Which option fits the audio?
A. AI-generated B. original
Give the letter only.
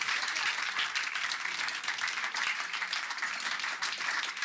A